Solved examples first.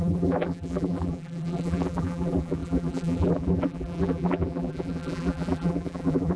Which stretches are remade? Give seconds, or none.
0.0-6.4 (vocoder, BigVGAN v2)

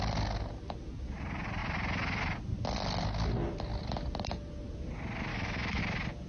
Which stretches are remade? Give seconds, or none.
5.3-5.8 (autoencoder, DAC-VAE)

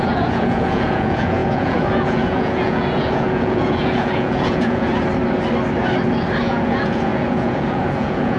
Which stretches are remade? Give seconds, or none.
0.0-4.9 (vocoder, Vocos); 6.4-8.4

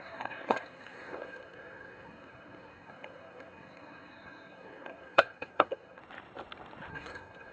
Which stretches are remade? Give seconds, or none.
0.0-6.0 (codec, SNAC); 6.9-7.5